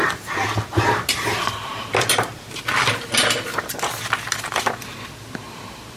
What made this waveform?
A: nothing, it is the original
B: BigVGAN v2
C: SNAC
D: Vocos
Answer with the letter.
A